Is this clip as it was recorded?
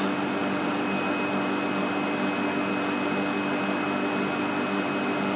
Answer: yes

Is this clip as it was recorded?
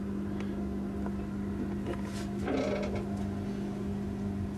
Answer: yes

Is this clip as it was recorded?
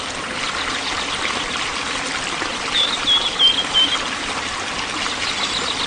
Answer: yes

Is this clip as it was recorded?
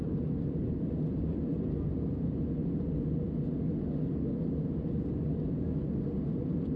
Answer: yes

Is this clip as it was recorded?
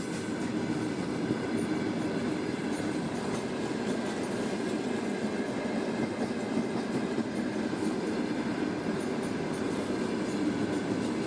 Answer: yes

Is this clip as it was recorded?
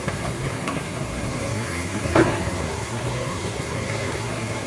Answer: no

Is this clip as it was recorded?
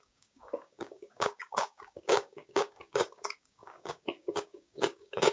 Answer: no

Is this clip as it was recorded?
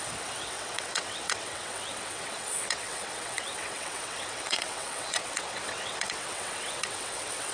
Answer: no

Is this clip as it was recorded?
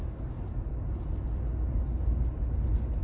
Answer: yes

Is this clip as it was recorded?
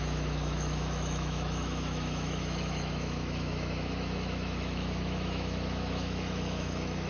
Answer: no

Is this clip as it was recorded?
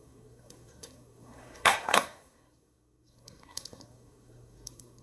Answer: no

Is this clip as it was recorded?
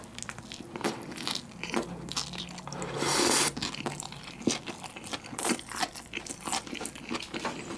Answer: yes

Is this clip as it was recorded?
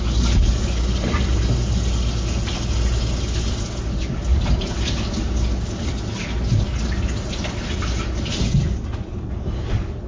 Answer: yes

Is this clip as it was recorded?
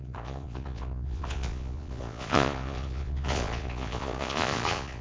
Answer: no